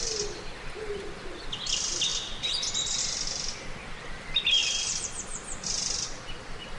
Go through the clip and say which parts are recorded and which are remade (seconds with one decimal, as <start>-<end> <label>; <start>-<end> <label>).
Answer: 0.0-6.8 recorded